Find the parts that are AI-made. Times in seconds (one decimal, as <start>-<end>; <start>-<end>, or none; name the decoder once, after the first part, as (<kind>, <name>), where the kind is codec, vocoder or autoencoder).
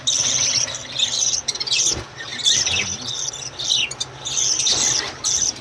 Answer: none